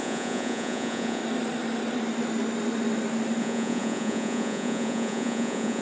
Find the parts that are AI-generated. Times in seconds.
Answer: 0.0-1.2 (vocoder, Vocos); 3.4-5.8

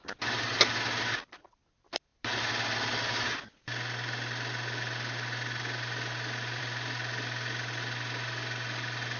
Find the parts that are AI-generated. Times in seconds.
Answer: none